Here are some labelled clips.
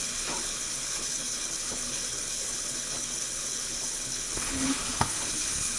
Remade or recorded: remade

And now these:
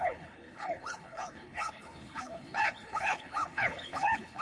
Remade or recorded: remade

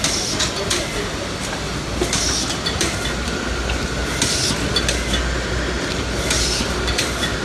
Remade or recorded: recorded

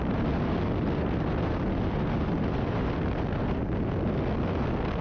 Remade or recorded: recorded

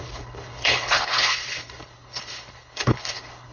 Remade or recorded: remade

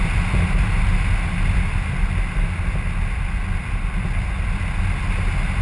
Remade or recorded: recorded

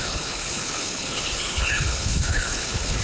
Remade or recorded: remade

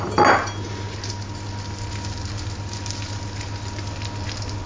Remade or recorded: recorded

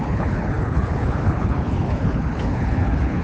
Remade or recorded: remade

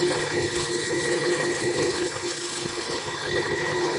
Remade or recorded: remade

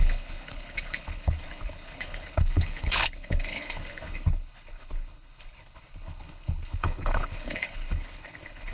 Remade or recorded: remade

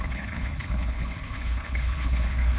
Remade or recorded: remade